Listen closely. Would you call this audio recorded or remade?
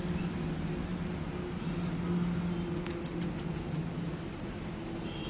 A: recorded